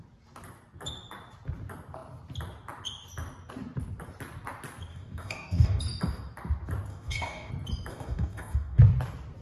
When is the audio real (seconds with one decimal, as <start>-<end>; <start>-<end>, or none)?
0.0-4.9; 5.8-6.9; 7.5-7.9; 8.8-9.4